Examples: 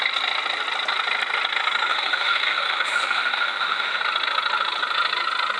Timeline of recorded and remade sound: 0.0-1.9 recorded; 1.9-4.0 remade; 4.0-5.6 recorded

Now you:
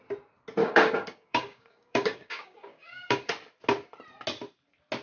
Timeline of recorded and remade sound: 0.0-0.6 recorded; 0.6-3.3 remade; 3.3-5.0 recorded